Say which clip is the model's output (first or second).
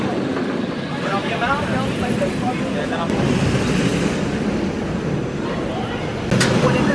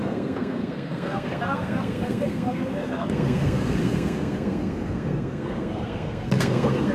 second